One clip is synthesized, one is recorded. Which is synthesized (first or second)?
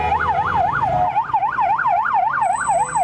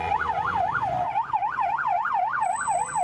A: second